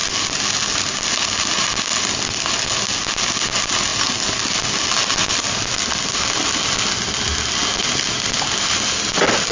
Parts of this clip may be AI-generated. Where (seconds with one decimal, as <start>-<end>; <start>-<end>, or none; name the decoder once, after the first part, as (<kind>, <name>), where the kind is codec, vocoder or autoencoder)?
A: none